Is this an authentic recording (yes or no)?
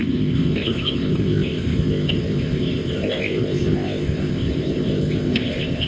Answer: no